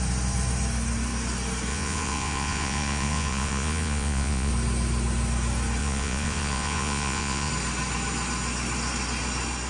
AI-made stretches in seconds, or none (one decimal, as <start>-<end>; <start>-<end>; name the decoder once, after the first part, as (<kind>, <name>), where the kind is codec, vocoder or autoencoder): 1.7-4.5 (vocoder, Vocos); 5.8-7.5

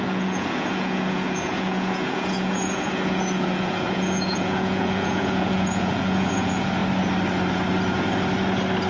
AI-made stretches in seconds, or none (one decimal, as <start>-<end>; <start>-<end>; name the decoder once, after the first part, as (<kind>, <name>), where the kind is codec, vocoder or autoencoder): 0.0-6.8 (vocoder, Vocos)

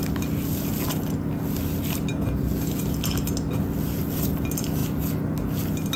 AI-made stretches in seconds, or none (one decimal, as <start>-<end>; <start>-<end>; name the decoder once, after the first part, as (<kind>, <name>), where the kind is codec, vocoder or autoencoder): none

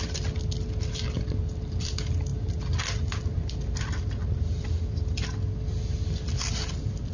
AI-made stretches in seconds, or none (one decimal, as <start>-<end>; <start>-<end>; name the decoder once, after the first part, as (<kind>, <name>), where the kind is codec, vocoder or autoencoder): none

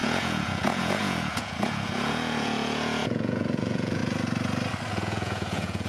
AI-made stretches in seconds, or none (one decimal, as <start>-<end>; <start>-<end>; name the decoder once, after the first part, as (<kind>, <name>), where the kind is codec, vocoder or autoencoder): 0.0-4.0 (vocoder, Vocos); 4.9-5.9